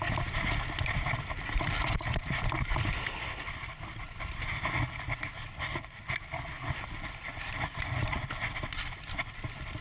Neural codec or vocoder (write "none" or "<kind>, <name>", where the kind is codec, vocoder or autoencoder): none